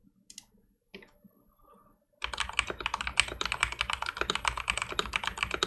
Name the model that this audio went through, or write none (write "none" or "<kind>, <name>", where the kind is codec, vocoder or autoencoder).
none